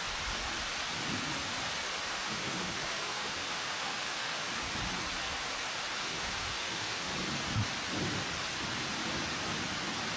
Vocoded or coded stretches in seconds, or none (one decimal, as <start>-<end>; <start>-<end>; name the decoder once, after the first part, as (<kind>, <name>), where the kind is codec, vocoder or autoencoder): 2.1-4.5 (autoencoder, DAC-VAE); 6.0-7.1